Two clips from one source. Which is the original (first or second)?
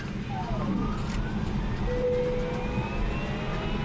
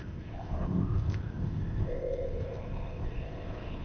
first